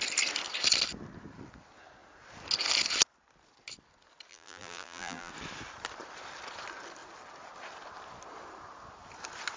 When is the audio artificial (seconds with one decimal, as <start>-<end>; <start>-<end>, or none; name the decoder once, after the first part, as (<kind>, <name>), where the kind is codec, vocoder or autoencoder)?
4.3-5.3 (vocoder, BigVGAN v2)